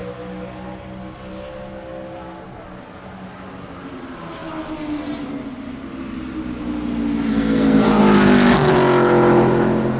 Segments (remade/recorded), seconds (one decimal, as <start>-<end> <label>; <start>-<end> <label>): 0.0-7.3 recorded; 7.3-8.0 remade; 8.0-10.0 recorded